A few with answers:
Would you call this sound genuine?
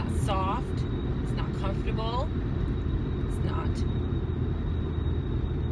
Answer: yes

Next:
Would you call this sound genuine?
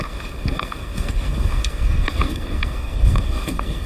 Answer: no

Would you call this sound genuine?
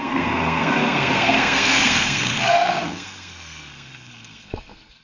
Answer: no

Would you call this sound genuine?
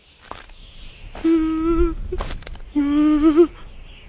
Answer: yes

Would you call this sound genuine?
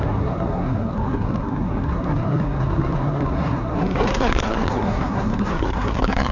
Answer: no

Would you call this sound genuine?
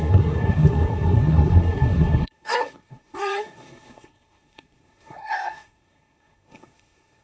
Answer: no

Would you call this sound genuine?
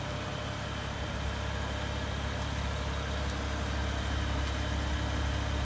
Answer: yes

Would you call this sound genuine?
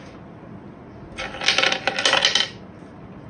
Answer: yes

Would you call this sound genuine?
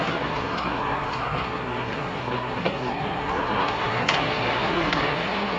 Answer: no